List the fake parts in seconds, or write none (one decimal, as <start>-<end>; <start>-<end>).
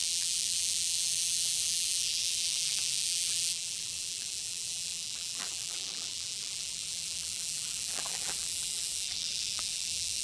0.0-10.2